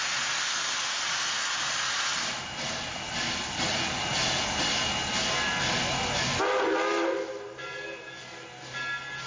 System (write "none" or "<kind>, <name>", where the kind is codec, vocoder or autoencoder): none